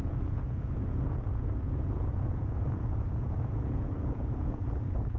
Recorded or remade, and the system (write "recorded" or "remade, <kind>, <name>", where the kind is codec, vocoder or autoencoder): remade, vocoder, Vocos